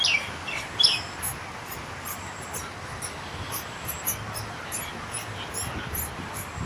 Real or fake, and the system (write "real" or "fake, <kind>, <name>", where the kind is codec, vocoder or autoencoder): real